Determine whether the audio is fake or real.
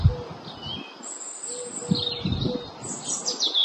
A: real